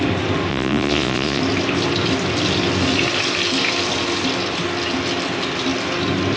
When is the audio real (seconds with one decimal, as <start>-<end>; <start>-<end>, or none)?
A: 0.0-0.5; 1.4-6.4